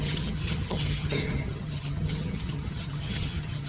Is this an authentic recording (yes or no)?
no